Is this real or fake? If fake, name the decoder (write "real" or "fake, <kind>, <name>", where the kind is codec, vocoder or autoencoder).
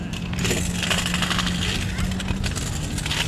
real